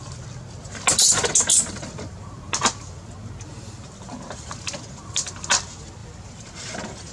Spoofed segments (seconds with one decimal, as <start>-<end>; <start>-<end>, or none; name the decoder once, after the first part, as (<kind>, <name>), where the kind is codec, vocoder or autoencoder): 1.5-5.4 (vocoder, BigVGAN v2); 6.0-7.1